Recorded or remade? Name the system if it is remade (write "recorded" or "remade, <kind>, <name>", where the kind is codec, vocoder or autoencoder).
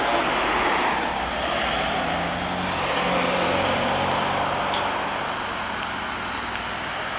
recorded